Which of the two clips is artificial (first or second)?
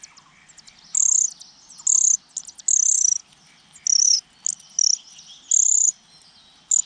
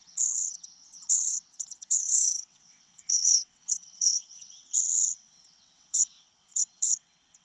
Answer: second